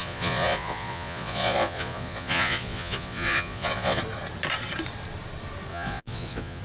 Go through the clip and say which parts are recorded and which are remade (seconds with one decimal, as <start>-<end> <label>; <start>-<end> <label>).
0.0-4.0 remade; 4.0-5.7 recorded; 5.7-6.6 remade